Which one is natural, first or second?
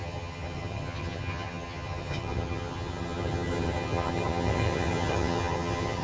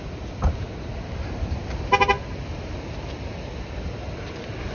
second